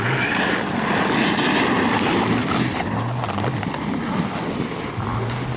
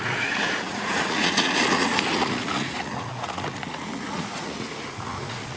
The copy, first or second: second